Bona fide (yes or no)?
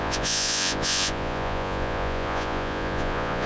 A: no